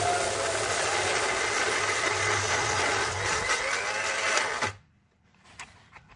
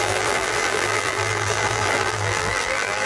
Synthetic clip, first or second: second